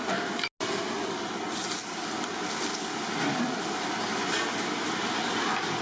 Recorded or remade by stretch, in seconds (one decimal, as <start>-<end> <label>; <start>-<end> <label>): 0.0-5.8 recorded